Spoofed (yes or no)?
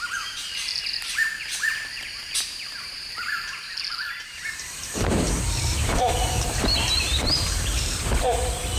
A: yes